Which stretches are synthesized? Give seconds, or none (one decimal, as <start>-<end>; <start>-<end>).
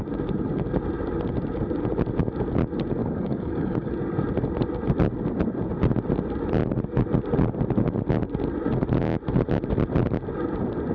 3.0-3.9